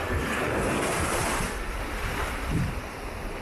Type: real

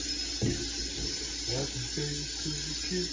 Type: real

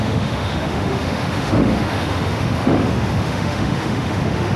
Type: fake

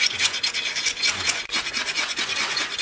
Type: fake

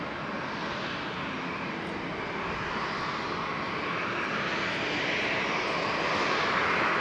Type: real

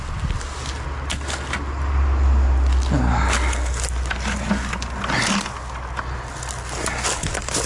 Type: real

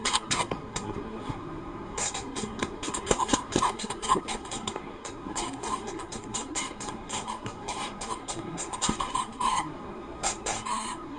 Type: fake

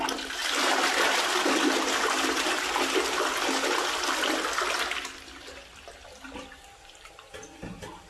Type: real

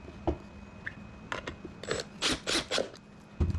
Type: real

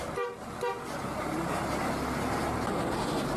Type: real